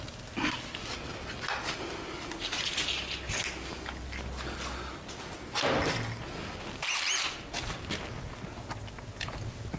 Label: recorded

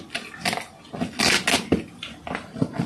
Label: recorded